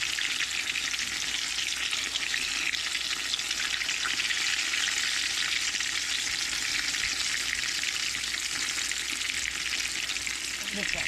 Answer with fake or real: real